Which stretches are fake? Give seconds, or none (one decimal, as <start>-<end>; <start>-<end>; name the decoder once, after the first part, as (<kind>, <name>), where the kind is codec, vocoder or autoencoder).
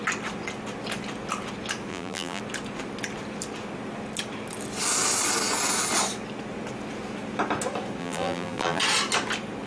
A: 1.9-2.4 (vocoder, BigVGAN v2); 8.0-8.8